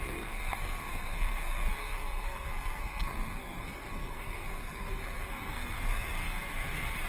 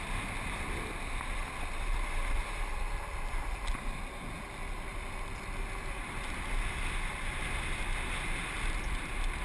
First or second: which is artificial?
first